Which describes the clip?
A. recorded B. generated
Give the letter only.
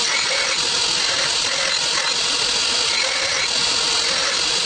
A